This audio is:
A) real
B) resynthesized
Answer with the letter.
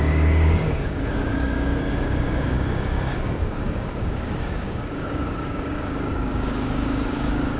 B